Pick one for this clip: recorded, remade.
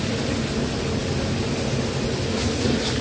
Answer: recorded